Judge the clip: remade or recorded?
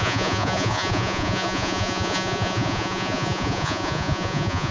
remade